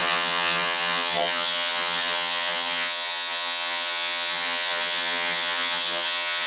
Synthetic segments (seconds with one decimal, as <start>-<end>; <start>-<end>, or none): 0.0-6.5